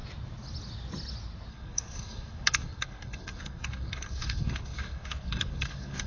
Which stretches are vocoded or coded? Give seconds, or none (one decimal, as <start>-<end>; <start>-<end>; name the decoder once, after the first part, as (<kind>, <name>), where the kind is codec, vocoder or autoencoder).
1.5-6.1 (codec, SNAC)